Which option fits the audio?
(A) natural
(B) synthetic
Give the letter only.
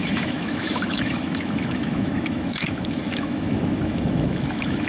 B